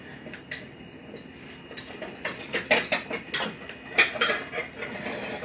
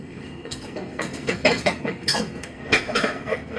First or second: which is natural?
first